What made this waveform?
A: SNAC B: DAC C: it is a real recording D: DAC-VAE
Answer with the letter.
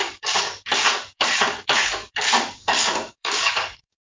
B